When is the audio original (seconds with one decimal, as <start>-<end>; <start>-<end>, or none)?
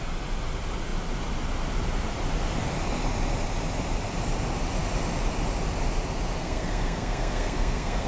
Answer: 0.0-6.4